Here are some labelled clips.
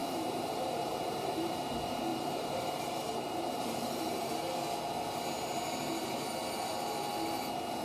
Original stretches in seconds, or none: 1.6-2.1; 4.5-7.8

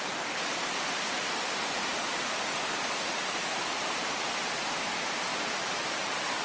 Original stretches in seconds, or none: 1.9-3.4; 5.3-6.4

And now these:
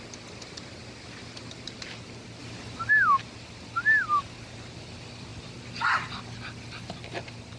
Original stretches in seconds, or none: 0.0-7.6

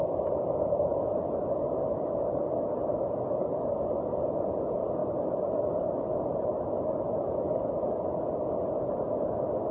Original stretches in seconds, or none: 0.0-5.0; 5.8-9.7

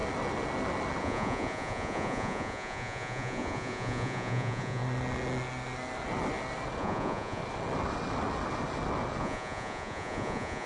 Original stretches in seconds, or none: 0.0-1.0; 4.8-6.8; 7.4-9.2

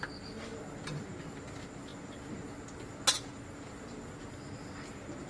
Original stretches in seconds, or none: 0.0-5.3

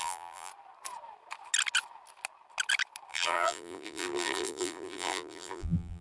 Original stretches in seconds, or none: 0.5-3.1